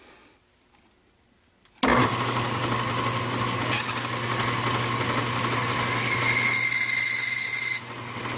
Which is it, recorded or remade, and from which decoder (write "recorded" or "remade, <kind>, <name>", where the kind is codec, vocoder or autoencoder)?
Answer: recorded